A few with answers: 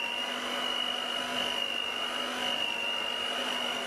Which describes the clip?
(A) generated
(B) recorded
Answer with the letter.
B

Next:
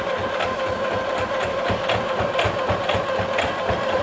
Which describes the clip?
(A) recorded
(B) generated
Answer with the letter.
A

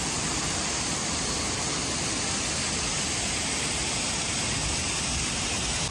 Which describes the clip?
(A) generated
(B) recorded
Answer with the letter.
B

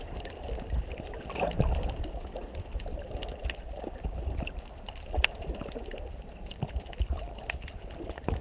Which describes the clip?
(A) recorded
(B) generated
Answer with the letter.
B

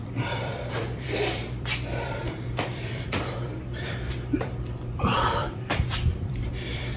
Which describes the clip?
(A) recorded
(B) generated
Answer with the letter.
B